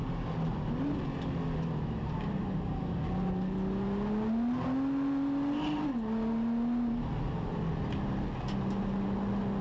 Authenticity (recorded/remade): recorded